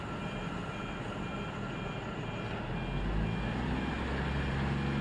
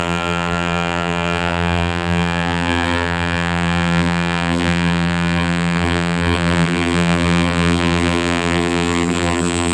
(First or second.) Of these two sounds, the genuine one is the first